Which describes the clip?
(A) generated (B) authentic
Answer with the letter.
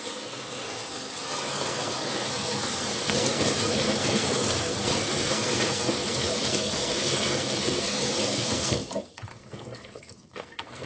A